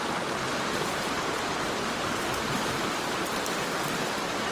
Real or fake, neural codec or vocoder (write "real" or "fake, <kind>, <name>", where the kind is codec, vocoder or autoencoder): real